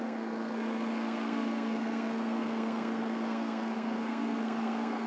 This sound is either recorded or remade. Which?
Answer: remade